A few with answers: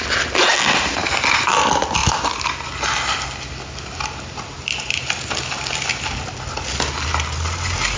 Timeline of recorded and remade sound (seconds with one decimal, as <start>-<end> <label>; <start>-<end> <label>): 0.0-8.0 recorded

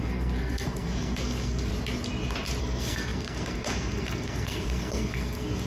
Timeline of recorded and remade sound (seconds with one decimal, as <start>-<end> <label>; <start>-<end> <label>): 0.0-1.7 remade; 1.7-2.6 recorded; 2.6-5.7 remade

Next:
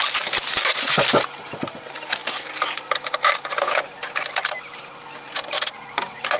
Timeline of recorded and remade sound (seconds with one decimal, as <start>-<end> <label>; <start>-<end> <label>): 0.0-6.4 recorded